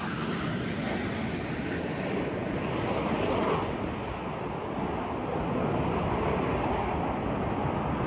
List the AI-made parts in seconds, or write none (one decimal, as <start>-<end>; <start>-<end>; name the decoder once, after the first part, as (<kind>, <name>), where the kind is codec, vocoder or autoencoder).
none